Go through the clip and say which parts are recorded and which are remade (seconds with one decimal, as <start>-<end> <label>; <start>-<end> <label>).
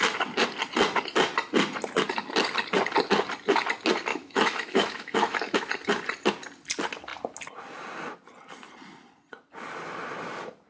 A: 0.0-4.1 recorded; 4.1-5.7 remade; 5.7-10.7 recorded